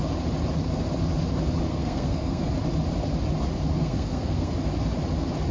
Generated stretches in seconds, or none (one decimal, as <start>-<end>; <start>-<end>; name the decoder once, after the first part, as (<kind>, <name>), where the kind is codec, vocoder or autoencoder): 1.7-2.5 (codec, SNAC); 3.8-4.5